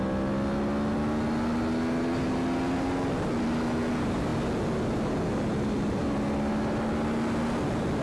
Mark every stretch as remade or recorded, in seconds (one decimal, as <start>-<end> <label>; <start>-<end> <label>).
0.0-8.0 recorded